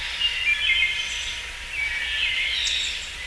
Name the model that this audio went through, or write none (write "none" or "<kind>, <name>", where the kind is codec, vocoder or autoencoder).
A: none